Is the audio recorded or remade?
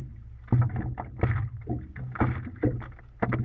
recorded